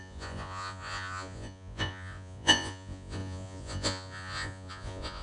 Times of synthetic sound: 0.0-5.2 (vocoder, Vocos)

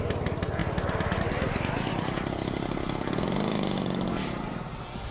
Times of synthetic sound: none

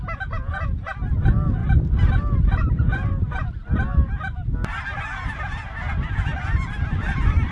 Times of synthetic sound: 0.0-0.5 (vocoder, BigVGAN v2); 1.1-1.6; 2.4-3.9; 5.4-7.5

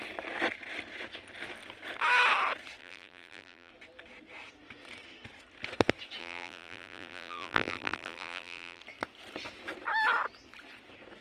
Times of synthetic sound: 2.8-3.7 (vocoder, BigVGAN v2); 6.2-8.8

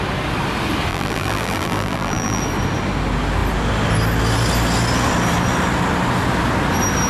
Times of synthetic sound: 0.9-2.4 (vocoder, BigVGAN v2)